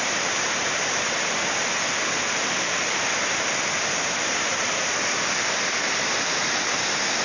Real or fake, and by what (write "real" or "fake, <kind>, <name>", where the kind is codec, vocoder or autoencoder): real